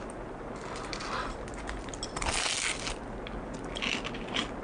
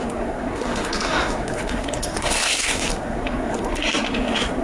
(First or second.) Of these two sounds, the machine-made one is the second